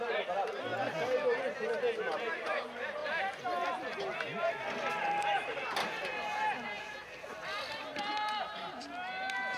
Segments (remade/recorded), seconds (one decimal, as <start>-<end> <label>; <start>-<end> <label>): 0.0-9.6 recorded